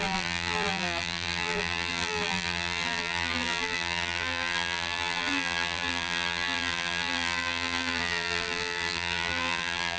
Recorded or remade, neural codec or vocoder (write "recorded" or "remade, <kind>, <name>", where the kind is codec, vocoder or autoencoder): remade, vocoder, BigVGAN v2